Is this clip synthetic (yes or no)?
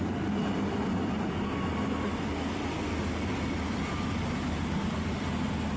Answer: no